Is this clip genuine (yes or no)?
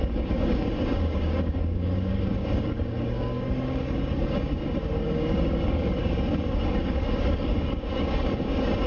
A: no